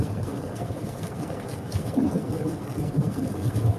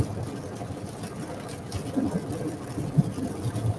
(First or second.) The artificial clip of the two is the first